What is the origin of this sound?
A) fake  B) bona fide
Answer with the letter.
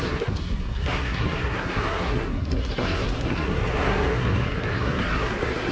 A